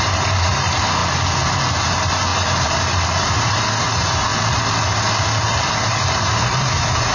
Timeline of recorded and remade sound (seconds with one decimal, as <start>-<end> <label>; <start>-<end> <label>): 0.0-1.0 remade; 1.0-1.5 recorded; 1.5-4.3 remade; 4.3-5.6 recorded; 5.6-7.1 remade